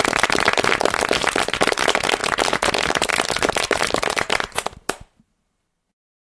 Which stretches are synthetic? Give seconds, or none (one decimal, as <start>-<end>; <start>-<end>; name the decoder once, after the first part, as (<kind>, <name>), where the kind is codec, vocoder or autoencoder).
3.1-5.8 (vocoder, BigVGAN v2)